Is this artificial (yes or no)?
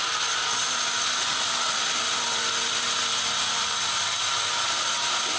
no